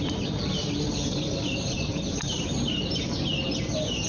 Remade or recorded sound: recorded